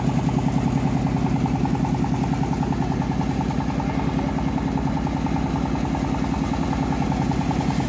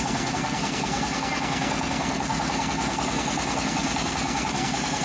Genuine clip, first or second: first